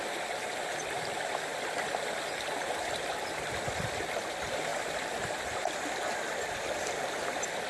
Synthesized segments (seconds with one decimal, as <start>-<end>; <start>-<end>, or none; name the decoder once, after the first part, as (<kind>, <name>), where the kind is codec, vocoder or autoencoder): 0.0-7.7 (vocoder, BigVGAN v2)